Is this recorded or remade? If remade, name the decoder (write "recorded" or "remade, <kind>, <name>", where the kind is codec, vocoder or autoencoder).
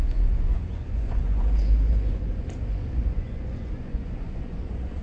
remade, vocoder, Vocos